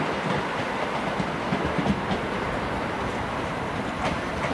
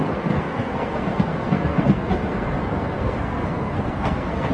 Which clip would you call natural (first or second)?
first